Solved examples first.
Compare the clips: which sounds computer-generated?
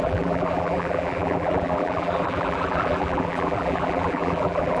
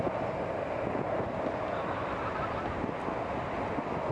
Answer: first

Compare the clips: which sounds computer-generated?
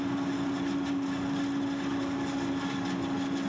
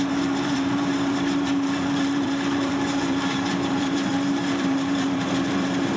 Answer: second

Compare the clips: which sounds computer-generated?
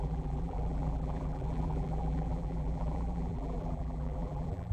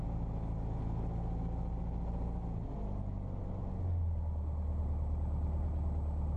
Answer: first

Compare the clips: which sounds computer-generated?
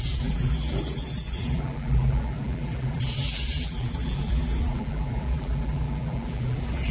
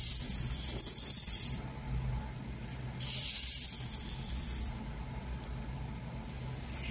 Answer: first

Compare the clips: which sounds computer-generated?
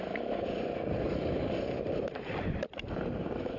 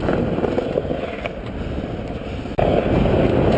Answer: first